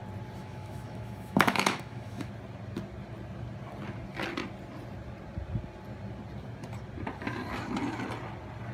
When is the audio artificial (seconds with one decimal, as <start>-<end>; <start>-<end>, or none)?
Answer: 0.4-2.3